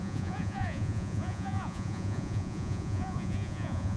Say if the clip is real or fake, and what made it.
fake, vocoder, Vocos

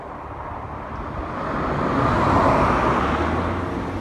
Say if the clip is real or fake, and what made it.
real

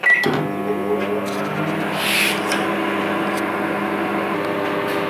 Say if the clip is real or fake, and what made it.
real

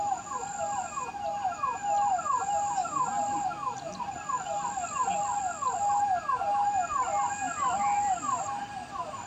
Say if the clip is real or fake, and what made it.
real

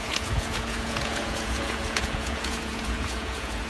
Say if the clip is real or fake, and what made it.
fake, vocoder, Vocos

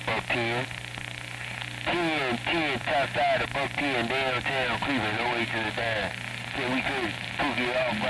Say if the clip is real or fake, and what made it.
real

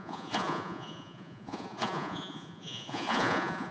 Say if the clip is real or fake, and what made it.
fake, vocoder, Vocos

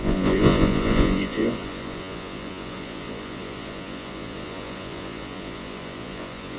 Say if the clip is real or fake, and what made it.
fake, vocoder, Vocos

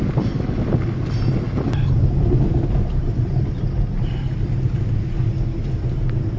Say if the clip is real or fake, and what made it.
real